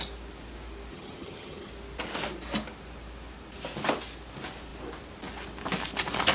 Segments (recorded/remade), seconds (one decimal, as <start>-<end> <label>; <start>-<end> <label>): 0.0-0.9 recorded; 0.9-1.7 remade; 1.7-6.3 recorded